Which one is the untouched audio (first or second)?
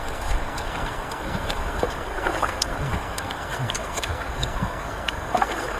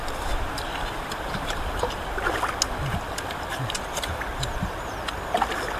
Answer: second